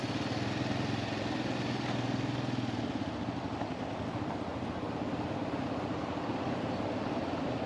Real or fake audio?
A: real